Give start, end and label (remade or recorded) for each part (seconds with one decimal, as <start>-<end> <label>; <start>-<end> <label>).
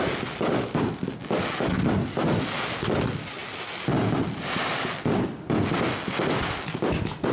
0.0-7.3 recorded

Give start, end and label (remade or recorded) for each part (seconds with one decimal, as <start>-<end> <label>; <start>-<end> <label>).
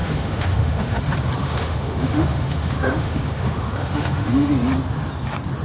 0.0-1.0 remade; 1.0-1.4 recorded; 1.4-4.5 remade; 4.5-5.6 recorded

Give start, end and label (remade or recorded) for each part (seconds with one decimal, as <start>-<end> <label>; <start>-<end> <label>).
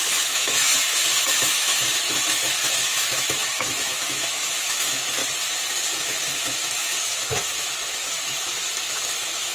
0.0-5.2 remade; 5.2-5.8 recorded; 5.8-9.5 remade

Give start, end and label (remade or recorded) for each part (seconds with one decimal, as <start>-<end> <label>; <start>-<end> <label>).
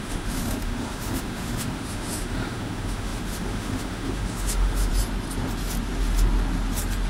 0.0-4.9 remade; 4.9-7.1 recorded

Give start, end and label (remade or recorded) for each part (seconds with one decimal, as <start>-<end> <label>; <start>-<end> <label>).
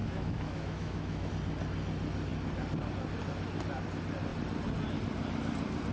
0.0-1.3 remade; 1.3-5.9 recorded